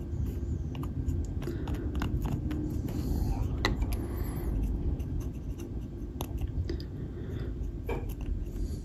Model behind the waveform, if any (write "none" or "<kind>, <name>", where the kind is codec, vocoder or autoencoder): none